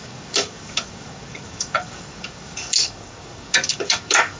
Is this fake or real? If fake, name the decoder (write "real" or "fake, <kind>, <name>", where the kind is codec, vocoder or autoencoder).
fake, codec, DAC